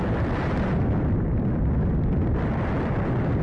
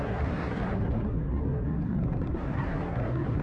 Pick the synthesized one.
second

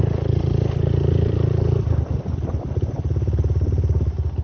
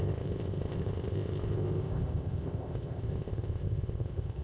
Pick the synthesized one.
second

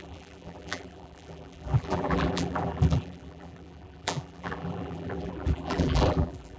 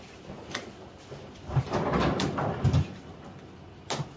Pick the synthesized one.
first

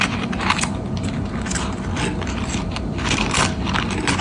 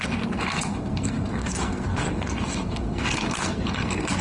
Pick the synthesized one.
second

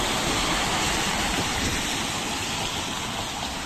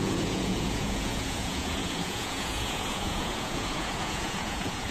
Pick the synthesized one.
second